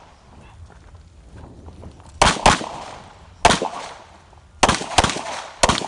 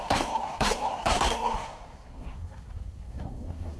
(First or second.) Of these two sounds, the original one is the first